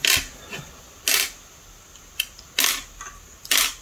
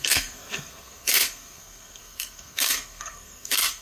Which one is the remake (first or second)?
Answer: second